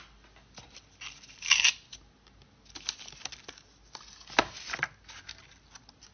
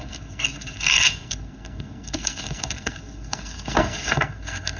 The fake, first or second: second